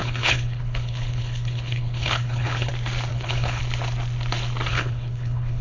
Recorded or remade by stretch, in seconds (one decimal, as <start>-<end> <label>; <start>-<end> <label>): 0.0-2.7 remade; 2.7-3.1 recorded; 3.1-3.6 remade; 3.6-4.7 recorded; 4.7-5.6 remade